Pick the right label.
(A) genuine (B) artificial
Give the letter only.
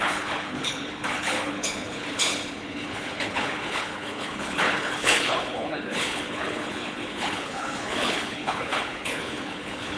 B